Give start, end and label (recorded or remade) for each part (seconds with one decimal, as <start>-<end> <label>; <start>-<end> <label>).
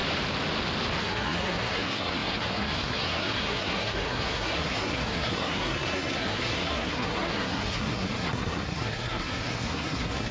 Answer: 0.0-1.0 recorded; 1.0-10.3 remade